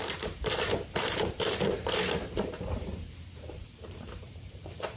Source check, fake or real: fake